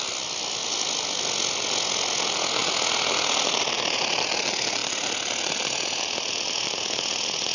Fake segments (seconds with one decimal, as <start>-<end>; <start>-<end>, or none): none